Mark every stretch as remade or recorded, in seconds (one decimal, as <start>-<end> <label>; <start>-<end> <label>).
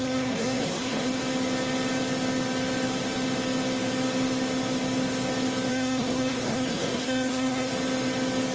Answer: 0.0-1.2 remade; 1.2-5.7 recorded; 5.7-7.7 remade; 7.7-8.5 recorded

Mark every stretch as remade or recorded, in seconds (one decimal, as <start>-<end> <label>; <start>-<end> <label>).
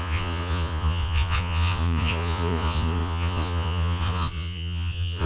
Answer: 0.0-5.3 remade